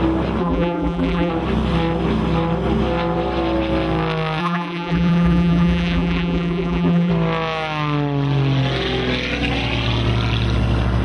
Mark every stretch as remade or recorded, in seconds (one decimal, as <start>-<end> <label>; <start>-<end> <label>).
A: 0.0-0.4 recorded; 0.4-1.3 remade; 1.3-4.4 recorded; 4.4-7.1 remade; 7.1-11.0 recorded